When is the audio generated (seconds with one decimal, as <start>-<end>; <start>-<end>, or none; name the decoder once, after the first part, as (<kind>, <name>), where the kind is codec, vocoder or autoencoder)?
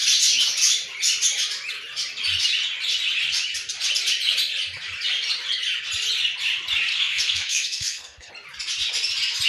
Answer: 6.9-8.3 (codec, SNAC)